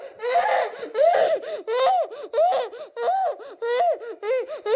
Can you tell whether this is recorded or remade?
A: recorded